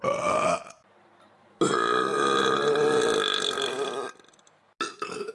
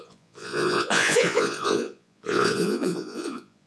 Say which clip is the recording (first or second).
first